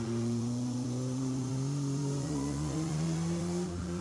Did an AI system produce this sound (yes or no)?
yes